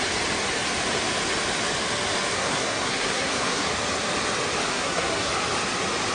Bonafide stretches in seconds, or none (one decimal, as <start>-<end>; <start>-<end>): 0.0-2.3; 3.7-4.7; 5.3-6.1